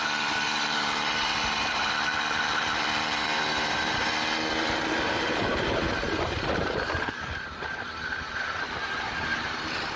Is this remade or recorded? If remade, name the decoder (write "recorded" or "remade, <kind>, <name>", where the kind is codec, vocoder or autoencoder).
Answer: remade, vocoder, BigVGAN v2